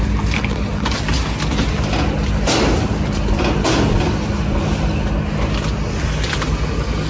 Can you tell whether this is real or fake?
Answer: real